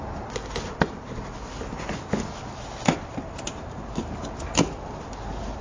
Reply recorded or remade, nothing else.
recorded